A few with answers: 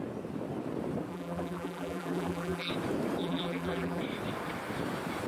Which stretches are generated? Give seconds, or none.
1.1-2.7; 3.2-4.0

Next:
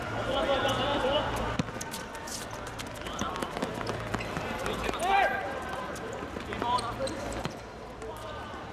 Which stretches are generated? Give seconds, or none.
0.0-8.7

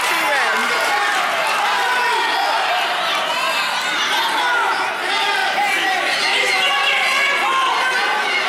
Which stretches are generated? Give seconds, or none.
0.6-1.3; 5.4-6.2